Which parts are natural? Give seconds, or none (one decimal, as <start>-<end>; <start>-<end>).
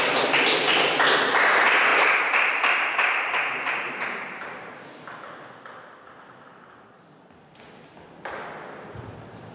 0.0-9.5